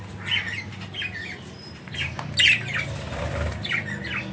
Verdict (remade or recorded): recorded